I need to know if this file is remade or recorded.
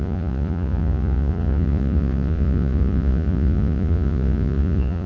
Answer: remade